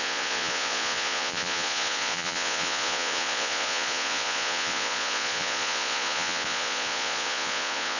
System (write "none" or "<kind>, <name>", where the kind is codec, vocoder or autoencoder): vocoder, Vocos